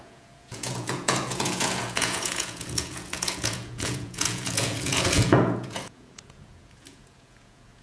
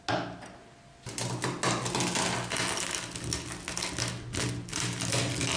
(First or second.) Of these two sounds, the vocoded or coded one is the first